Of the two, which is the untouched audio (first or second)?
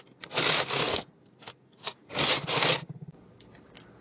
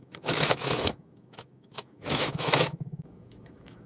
first